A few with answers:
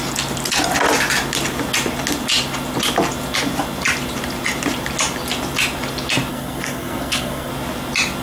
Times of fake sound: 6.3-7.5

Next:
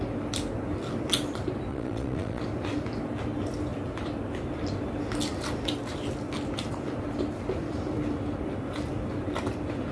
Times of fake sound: 1.7-2.4

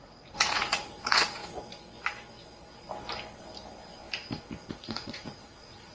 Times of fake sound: 0.0-1.4; 4.7-5.9